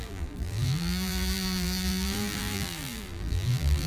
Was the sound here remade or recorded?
remade